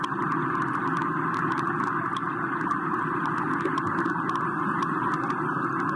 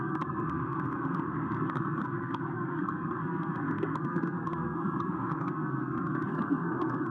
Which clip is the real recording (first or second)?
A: first